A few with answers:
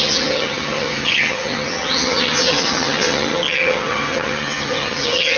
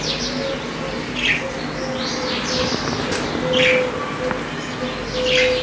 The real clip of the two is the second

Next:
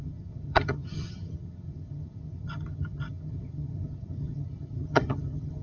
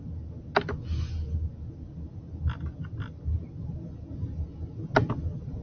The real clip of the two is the second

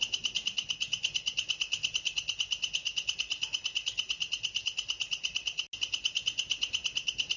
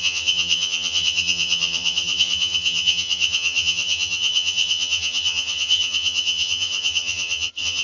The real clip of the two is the first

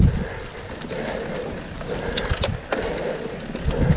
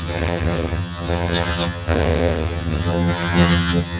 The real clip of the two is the first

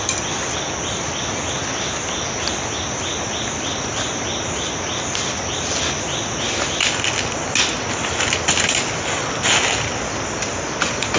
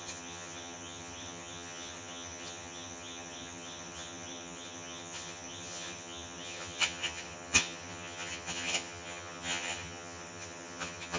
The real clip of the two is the first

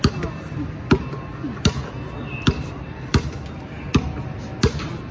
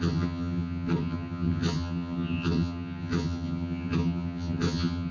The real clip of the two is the first